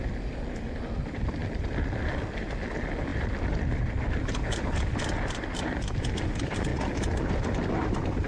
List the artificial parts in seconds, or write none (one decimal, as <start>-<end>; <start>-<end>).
0.0-6.7; 7.3-8.3